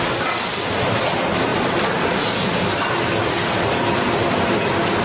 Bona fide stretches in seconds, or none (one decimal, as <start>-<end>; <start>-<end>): 0.0-5.0